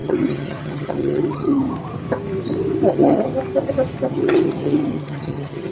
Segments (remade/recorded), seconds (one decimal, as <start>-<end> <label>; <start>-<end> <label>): 0.0-1.6 remade; 1.6-2.9 recorded; 2.9-3.3 remade; 3.3-4.1 recorded; 4.1-5.7 remade